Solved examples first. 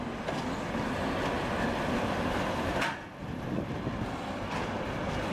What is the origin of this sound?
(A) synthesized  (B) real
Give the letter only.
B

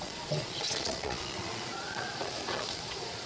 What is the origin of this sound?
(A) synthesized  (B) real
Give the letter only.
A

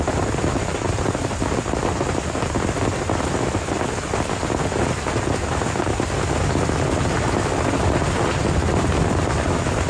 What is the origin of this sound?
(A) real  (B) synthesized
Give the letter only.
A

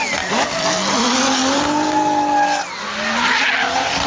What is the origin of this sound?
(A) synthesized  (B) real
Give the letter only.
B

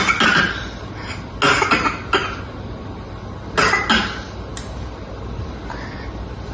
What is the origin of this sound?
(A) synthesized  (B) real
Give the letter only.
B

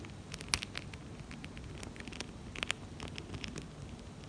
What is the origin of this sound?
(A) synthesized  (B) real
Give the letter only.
B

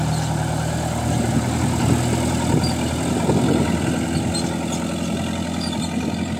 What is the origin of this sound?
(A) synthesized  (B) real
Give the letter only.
B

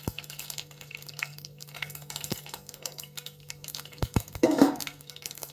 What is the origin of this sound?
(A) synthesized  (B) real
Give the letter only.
A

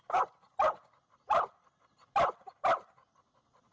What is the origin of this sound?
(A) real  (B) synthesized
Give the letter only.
A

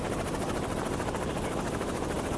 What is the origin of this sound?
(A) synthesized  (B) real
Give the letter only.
B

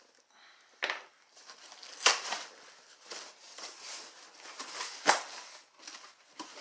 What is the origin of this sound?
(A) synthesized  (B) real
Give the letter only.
B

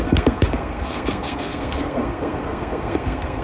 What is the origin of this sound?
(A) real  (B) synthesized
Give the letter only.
B